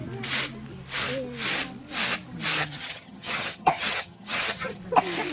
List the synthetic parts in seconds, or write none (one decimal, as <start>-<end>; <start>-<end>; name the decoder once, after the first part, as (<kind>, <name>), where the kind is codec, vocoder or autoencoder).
2.6-4.8 (vocoder, HiFi-GAN)